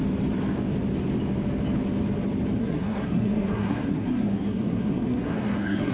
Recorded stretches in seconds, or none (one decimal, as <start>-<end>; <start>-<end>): 0.0-2.6